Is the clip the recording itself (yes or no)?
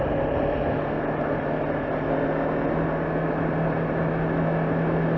yes